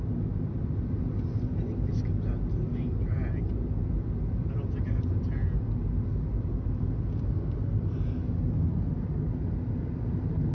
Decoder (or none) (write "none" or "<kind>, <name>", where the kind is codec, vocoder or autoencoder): none